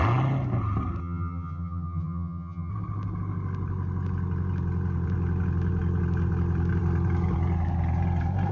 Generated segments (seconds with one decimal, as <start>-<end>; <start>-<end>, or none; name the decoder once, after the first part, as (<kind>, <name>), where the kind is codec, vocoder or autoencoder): 1.0-2.7 (vocoder, HiFi-GAN)